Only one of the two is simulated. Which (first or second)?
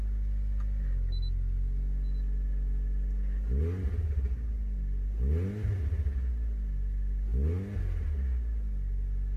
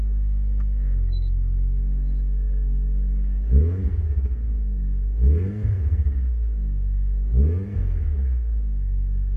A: second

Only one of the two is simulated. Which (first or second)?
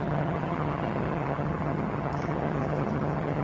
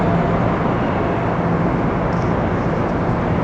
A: first